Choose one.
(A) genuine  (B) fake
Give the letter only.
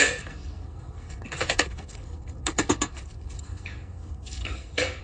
B